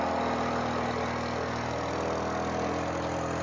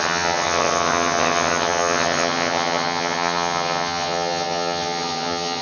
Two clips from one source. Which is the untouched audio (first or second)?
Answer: first